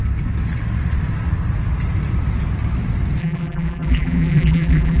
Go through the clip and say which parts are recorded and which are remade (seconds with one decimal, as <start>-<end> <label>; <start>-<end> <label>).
0.0-3.2 recorded; 3.2-5.0 remade